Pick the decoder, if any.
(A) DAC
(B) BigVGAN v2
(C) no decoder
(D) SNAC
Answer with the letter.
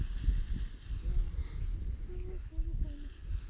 C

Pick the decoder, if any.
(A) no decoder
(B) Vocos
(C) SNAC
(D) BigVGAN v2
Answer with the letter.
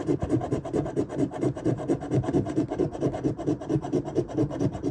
D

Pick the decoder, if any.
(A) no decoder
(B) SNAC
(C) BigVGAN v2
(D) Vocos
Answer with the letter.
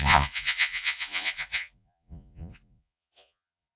D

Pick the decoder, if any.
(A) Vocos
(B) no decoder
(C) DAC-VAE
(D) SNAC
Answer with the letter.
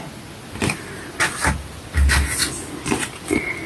B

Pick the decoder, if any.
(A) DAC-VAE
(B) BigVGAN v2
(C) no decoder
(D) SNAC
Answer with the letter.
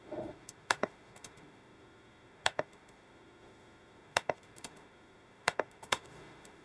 A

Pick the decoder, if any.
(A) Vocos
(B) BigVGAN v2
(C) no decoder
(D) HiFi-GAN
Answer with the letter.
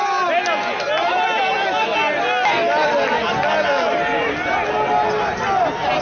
C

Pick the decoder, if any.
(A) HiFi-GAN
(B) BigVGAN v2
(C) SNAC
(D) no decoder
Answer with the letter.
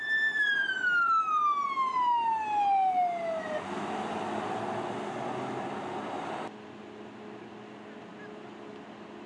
D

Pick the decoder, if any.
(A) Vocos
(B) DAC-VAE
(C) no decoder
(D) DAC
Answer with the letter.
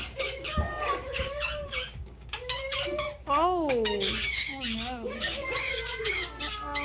D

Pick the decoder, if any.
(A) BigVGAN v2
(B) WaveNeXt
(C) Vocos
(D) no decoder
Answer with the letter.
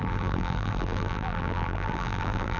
A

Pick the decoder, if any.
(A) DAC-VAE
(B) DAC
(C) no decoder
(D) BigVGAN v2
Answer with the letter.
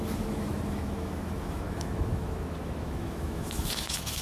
A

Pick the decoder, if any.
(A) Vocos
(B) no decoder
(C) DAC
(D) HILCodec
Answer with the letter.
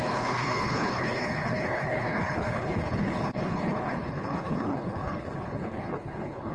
D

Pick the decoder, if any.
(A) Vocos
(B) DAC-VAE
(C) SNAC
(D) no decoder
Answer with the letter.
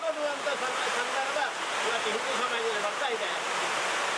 D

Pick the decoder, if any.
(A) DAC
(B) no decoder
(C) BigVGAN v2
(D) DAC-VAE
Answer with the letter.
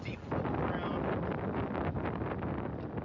B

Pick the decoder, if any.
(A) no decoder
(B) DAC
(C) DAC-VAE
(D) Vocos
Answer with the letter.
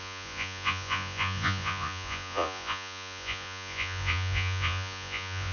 D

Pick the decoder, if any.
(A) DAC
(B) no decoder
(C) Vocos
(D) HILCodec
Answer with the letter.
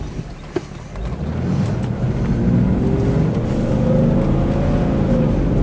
B